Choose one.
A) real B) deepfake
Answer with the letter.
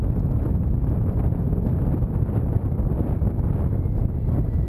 A